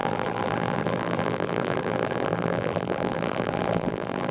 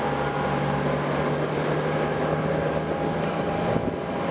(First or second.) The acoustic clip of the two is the second